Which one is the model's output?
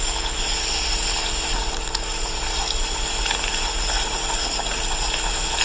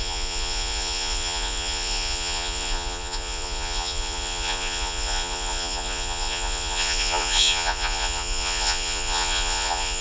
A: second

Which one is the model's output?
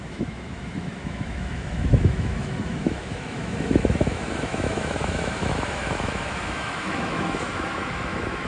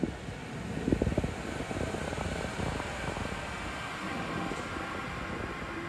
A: first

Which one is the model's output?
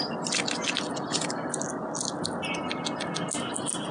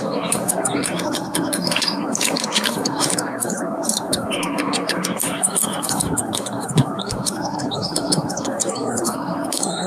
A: second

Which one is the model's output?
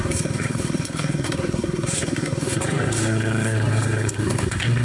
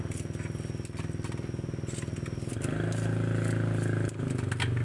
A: first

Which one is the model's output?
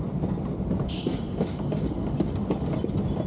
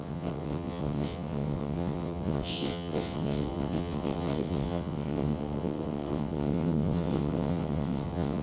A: second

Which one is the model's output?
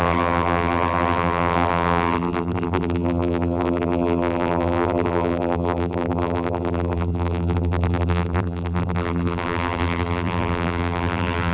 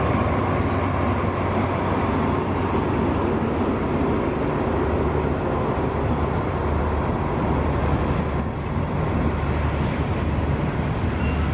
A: first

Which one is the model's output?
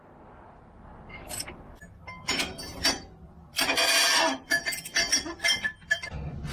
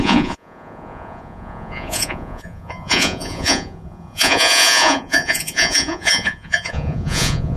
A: second